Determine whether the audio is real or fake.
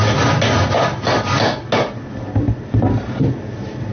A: real